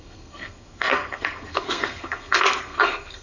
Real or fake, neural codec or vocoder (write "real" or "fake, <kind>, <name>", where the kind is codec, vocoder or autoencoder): fake, codec, SNAC